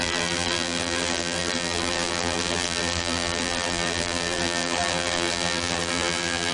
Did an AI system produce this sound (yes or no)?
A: yes